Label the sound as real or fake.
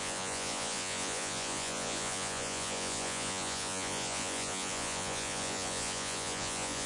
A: fake